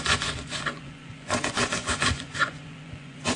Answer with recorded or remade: remade